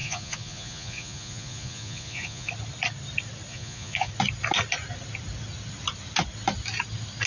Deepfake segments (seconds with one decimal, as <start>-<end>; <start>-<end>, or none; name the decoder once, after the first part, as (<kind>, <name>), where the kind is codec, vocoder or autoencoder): 0.0-2.5 (vocoder, Vocos); 3.5-4.1